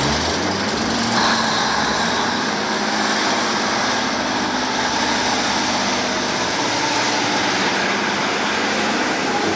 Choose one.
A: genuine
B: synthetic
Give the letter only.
A